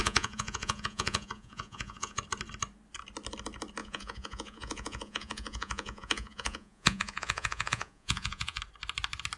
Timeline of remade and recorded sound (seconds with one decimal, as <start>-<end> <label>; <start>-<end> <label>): 0.0-2.2 remade; 2.2-3.8 recorded; 3.8-8.6 remade; 8.6-9.4 recorded

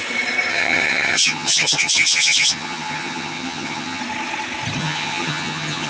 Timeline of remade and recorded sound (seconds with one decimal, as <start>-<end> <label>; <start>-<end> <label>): 0.0-0.5 recorded; 0.5-4.0 remade; 4.0-4.8 recorded; 4.8-5.9 remade

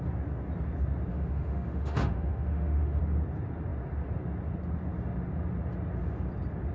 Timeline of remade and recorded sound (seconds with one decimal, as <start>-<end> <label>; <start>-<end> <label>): 0.0-1.1 recorded; 1.1-3.0 remade; 3.0-6.7 recorded

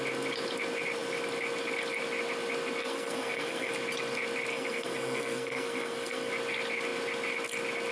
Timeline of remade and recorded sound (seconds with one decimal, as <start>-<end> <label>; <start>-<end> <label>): 0.0-2.8 recorded; 2.8-3.7 remade; 3.7-4.5 recorded; 4.5-6.3 remade; 6.3-7.9 recorded

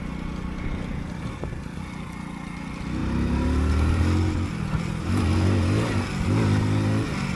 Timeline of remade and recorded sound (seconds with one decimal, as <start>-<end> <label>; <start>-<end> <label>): 0.0-3.0 recorded; 3.0-4.0 remade; 4.0-7.4 recorded

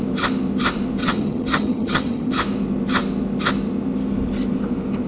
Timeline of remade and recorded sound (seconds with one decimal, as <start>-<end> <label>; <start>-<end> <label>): 0.0-1.0 recorded; 1.0-2.3 remade; 2.3-5.1 recorded